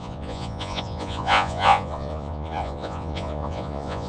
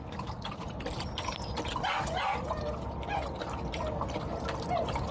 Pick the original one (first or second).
second